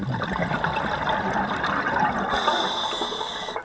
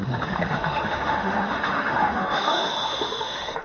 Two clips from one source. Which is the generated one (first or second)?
second